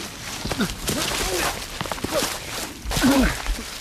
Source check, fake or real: real